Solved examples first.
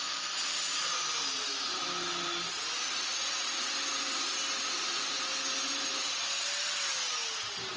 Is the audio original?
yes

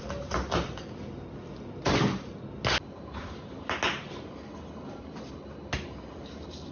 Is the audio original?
yes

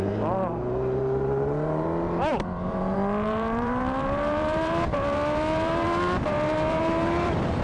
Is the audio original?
no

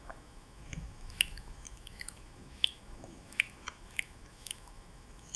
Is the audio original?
no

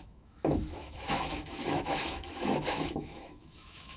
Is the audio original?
no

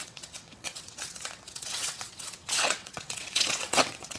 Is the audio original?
no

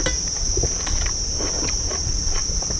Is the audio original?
yes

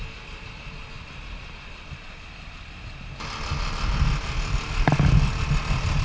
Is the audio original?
yes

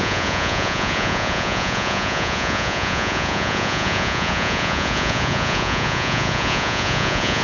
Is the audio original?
no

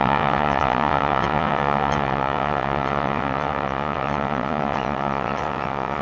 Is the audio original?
no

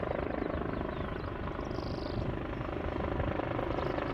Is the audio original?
no